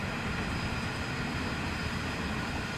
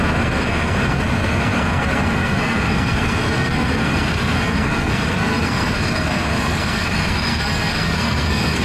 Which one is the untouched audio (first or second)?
first